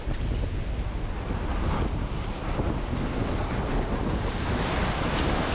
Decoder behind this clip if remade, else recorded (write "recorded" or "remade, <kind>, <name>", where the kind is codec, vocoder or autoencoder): recorded